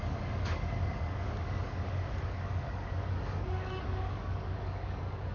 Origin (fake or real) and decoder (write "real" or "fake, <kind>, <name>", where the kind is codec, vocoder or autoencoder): fake, codec, DAC